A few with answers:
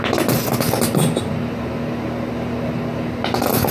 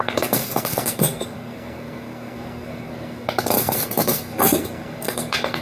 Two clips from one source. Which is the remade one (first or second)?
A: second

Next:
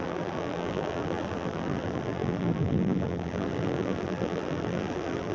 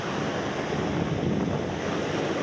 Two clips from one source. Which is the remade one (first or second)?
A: first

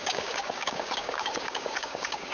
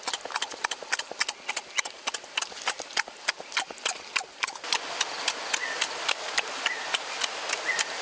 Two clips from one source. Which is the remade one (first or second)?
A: first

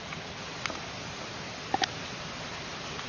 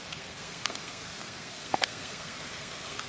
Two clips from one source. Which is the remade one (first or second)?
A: second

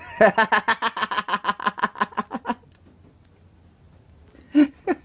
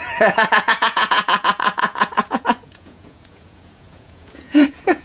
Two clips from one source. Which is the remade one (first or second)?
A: second